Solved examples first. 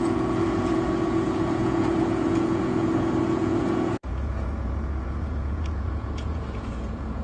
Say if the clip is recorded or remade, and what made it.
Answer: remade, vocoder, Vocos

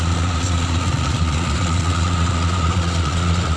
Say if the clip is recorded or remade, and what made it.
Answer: remade, vocoder, Vocos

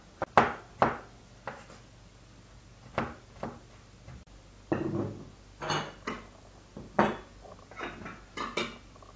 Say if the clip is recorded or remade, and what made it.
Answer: recorded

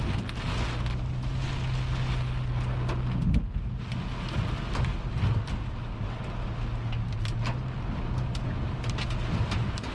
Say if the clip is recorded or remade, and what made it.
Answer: recorded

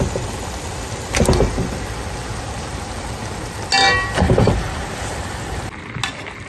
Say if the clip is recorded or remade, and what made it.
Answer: recorded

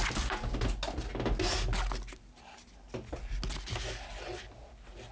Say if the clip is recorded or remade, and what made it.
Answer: recorded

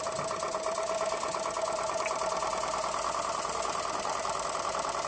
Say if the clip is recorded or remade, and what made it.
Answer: recorded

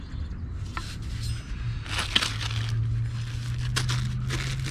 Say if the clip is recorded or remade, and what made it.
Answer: recorded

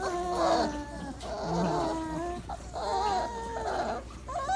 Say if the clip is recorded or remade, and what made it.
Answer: recorded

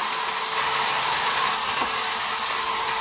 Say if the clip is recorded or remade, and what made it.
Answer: recorded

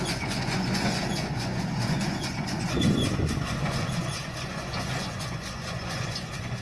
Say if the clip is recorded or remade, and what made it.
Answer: remade, vocoder, Vocos